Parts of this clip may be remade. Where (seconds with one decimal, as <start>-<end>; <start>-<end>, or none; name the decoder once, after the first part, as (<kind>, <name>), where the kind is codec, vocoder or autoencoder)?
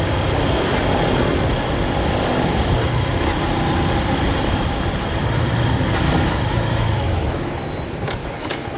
6.5-7.5 (autoencoder, DAC-VAE); 8.2-8.8